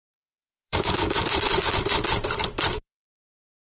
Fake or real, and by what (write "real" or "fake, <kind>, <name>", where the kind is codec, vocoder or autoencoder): fake, vocoder, BigVGAN v2